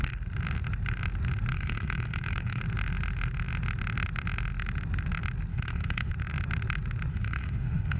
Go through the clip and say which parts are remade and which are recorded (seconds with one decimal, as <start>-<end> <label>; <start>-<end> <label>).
0.0-1.5 recorded; 1.5-2.6 remade; 2.6-5.5 recorded; 5.5-6.1 remade; 6.1-7.1 recorded; 7.1-8.0 remade